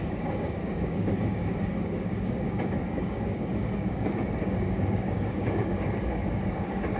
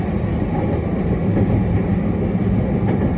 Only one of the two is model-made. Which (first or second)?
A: first